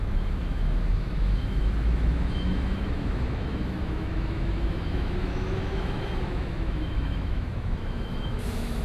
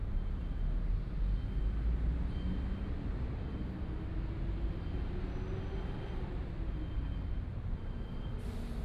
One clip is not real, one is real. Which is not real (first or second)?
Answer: first